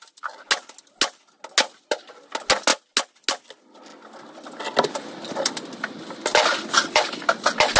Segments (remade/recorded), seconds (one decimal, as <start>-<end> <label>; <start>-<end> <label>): 0.0-7.8 recorded